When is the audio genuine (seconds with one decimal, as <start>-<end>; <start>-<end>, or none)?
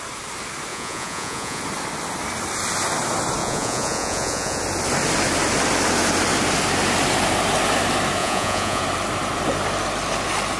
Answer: 0.0-0.7; 1.6-3.4; 4.6-8.2; 8.8-10.6